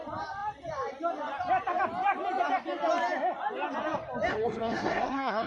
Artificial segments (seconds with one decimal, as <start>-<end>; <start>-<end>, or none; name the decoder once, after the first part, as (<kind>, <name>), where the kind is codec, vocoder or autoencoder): 4.3-5.5 (codec, SNAC)